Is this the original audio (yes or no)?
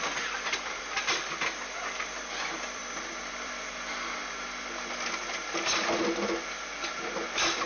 yes